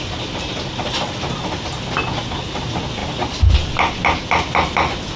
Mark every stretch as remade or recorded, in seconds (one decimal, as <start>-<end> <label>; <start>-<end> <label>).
0.0-5.2 recorded